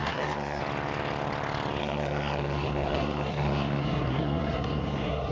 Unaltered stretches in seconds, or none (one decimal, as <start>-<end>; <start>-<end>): 0.6-1.8